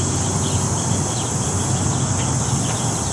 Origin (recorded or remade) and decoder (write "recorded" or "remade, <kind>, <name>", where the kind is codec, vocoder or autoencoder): recorded